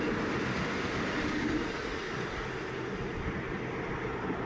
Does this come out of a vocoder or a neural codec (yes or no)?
no